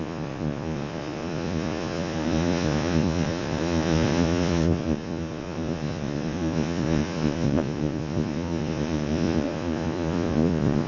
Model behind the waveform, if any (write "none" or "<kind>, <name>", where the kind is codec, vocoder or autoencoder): vocoder, Vocos